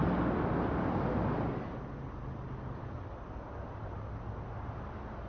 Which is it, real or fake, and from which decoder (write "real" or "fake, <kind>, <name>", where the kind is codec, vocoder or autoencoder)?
real